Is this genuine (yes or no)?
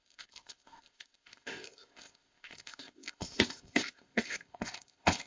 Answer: no